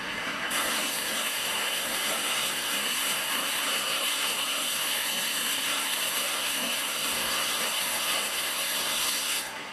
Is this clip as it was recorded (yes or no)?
no